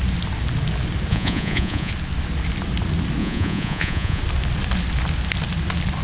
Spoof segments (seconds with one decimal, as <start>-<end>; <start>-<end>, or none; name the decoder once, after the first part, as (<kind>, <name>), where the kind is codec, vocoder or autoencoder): 1.1-1.9 (vocoder, Vocos); 3.2-4.2